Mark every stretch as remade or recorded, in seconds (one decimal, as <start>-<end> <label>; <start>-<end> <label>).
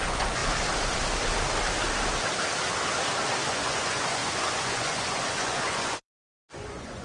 0.0-0.4 remade; 0.4-3.5 recorded; 3.5-7.0 remade